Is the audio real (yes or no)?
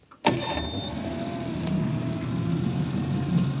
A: yes